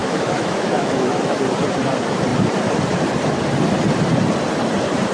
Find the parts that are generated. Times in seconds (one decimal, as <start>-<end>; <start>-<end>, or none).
0.0-1.4